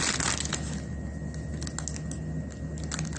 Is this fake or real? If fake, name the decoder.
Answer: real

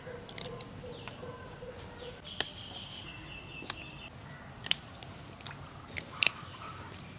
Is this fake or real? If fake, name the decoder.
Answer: fake, vocoder, BigVGAN v2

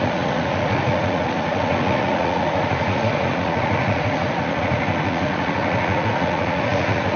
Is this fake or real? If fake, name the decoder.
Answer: fake, vocoder, Vocos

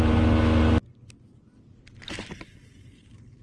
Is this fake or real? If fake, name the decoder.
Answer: real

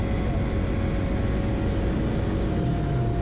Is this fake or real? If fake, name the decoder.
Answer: real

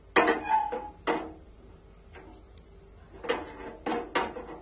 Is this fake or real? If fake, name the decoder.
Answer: real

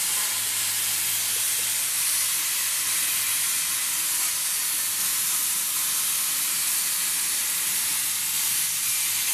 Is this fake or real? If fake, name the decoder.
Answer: real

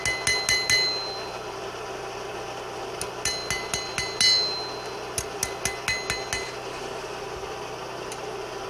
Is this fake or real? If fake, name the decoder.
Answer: real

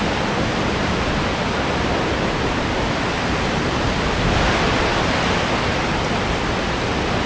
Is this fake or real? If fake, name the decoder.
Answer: real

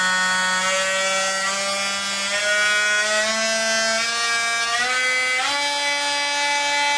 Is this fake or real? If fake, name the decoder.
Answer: real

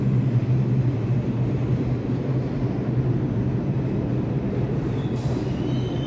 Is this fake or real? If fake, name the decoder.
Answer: real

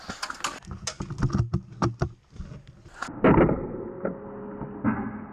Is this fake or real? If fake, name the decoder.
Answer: real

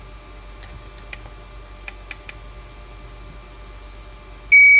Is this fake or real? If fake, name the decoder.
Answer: real